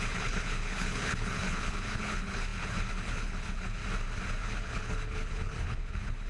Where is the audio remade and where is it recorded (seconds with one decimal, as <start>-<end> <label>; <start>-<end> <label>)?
0.0-3.8 remade; 3.8-4.4 recorded; 4.4-6.3 remade